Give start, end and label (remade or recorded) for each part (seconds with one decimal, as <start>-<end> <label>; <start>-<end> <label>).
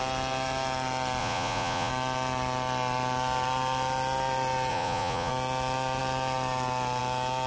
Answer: 0.0-1.2 recorded; 1.2-1.9 remade; 1.9-4.7 recorded; 4.7-5.3 remade; 5.3-7.5 recorded